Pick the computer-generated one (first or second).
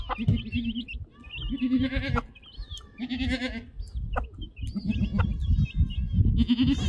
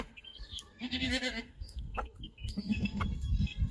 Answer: second